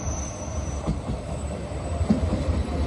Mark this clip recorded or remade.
recorded